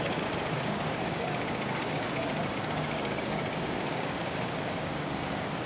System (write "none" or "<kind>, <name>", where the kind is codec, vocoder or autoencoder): codec, DAC